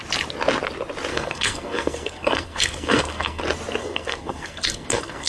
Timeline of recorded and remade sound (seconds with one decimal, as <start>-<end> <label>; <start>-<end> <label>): 0.0-1.1 recorded; 1.1-3.4 remade; 3.4-3.8 recorded; 3.8-5.3 remade